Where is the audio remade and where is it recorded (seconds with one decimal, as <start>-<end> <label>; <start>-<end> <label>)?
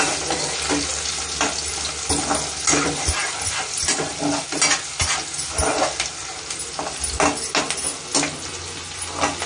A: 0.0-9.5 recorded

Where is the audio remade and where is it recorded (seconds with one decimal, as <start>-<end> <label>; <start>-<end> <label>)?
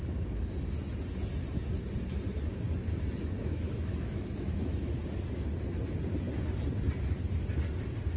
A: 0.0-3.4 recorded; 3.4-5.0 remade; 5.0-8.2 recorded